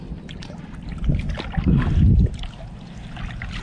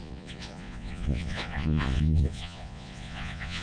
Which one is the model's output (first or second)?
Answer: second